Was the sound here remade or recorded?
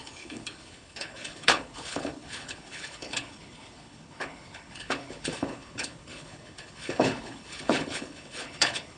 remade